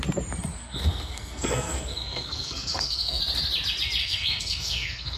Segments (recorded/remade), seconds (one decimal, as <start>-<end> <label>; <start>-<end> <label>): 0.0-0.5 recorded; 0.5-3.2 remade; 3.2-4.0 recorded; 4.0-5.2 remade